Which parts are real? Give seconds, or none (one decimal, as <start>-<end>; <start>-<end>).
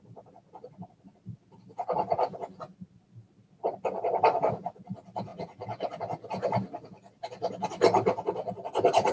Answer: 0.0-9.1